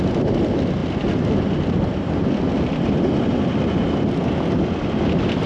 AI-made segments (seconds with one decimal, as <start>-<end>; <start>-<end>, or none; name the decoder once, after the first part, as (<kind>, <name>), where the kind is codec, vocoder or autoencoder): none